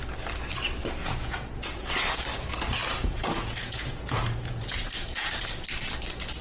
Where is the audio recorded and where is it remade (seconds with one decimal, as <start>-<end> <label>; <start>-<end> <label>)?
0.0-1.0 recorded; 1.0-1.8 remade; 1.8-2.8 recorded; 2.8-5.5 remade; 5.5-6.4 recorded